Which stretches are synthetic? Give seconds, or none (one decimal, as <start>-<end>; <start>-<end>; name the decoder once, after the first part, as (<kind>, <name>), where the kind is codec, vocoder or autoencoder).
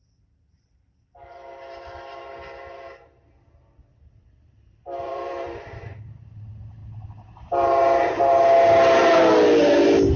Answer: 3.9-5.9 (vocoder, BigVGAN v2)